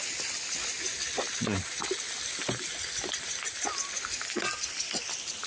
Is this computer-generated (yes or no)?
no